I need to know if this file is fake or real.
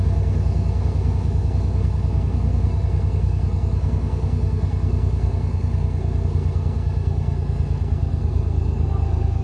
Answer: fake